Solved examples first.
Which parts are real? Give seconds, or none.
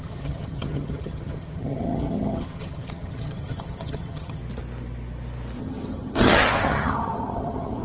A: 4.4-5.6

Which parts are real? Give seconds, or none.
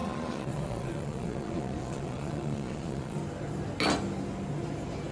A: 3.2-5.1